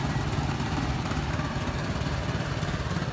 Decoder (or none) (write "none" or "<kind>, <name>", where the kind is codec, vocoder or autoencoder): none